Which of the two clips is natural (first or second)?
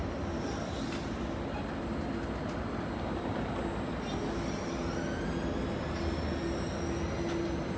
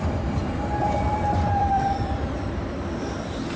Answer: first